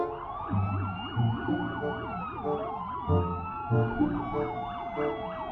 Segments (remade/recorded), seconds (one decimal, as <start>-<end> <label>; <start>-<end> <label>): 0.0-5.5 recorded